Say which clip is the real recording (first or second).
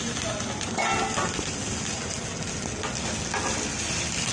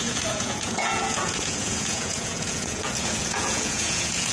first